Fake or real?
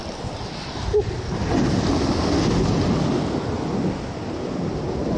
real